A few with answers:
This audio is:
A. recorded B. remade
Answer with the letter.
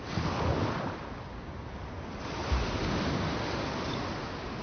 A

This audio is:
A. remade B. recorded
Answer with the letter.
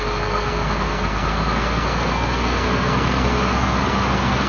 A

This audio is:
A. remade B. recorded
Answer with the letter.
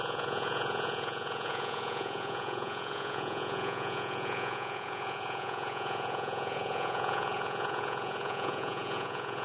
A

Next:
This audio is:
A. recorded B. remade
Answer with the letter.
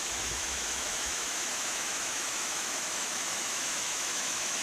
B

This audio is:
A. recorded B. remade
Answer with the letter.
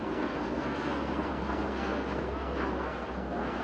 B